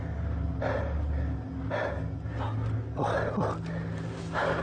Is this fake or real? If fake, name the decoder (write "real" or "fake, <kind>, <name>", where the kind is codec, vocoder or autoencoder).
real